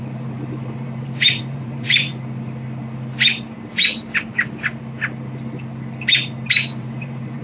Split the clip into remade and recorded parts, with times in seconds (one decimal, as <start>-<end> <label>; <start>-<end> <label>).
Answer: 0.0-2.1 remade; 2.1-6.5 recorded; 6.5-7.4 remade